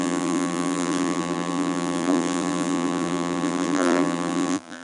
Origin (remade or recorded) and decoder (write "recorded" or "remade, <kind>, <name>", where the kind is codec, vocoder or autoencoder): remade, vocoder, BigVGAN v2